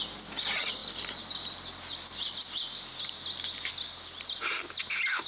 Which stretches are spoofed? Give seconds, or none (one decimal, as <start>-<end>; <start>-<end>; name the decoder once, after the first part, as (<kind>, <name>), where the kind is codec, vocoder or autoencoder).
none